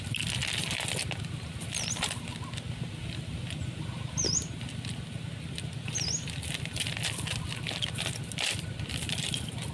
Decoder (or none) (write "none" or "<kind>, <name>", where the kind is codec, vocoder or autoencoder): none